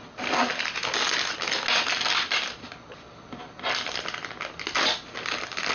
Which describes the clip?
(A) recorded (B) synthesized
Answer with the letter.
A